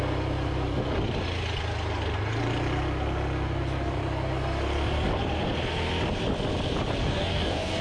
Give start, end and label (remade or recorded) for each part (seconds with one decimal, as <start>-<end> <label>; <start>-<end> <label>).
0.0-7.0 recorded; 7.0-7.8 remade